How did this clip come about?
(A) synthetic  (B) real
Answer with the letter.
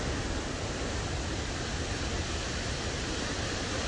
B